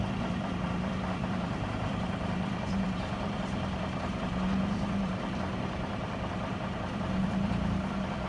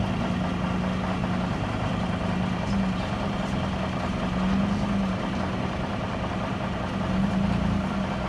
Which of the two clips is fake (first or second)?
first